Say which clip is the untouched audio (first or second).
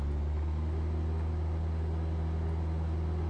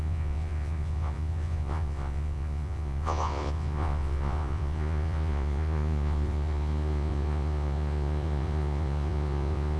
first